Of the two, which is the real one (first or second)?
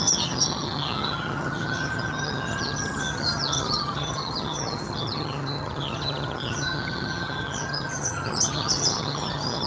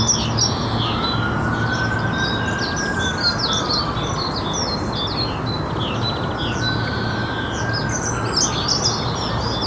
second